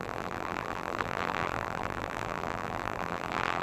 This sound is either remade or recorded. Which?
remade